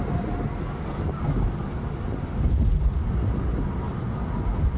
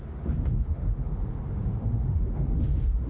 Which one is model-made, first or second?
second